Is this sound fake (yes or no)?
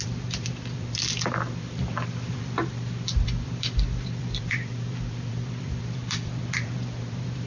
yes